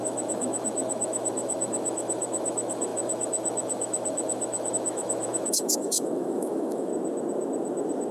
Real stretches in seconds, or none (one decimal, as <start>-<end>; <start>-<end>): 6.9-8.1